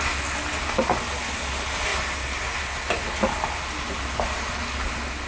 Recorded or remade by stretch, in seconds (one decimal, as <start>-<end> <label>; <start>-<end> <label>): 0.0-5.3 recorded